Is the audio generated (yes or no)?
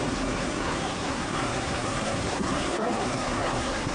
yes